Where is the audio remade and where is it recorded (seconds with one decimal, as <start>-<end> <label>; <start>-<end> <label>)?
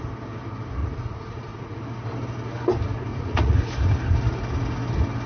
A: 0.0-0.8 recorded; 0.8-1.8 remade; 1.8-3.1 recorded; 3.1-3.7 remade; 3.7-5.3 recorded